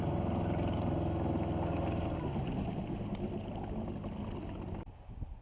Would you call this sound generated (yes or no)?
no